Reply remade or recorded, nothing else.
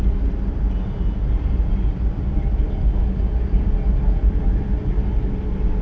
recorded